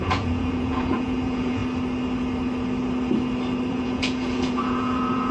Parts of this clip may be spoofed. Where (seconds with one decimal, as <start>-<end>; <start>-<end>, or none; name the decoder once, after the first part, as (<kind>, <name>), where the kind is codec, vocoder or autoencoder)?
0.0-1.6 (vocoder, Vocos); 3.7-5.3